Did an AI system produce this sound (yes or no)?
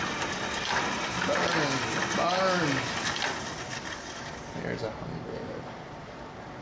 no